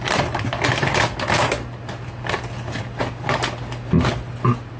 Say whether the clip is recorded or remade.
recorded